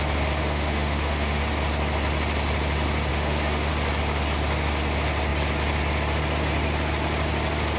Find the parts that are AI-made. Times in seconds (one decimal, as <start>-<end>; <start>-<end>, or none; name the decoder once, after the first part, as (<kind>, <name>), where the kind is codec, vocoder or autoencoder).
0.4-1.4 (autoencoder, DAC-VAE); 3.1-3.7